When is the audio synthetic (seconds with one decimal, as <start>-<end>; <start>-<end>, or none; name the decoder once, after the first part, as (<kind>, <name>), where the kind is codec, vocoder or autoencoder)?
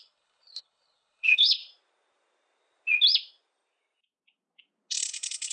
0.0-1.6 (codec, HILCodec); 4.9-5.5